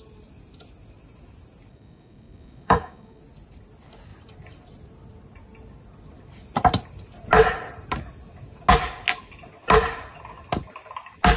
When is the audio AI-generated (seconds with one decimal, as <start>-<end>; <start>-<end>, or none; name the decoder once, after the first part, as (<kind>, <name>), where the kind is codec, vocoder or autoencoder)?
1.7-3.2 (codec, DAC)